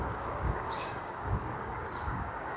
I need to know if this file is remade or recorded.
remade